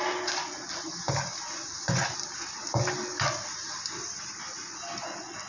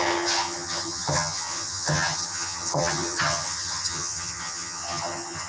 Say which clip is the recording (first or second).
first